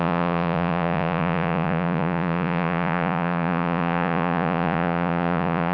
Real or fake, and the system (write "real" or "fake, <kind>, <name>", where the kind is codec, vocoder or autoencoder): fake, vocoder, Vocos